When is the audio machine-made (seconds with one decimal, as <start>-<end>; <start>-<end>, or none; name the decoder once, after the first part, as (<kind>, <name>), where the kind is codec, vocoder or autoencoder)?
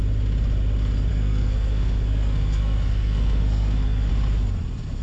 1.1-4.1 (codec, SNAC)